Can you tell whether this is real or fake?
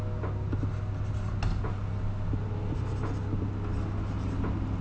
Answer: real